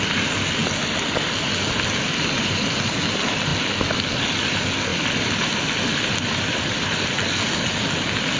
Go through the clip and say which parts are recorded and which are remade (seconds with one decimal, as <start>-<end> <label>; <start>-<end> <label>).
0.0-4.9 recorded; 4.9-7.1 remade; 7.1-8.4 recorded